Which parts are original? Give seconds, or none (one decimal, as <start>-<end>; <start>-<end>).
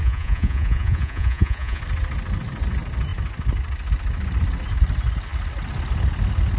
1.8-6.6